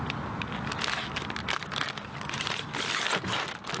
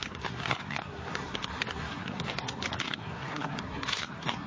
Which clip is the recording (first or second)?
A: first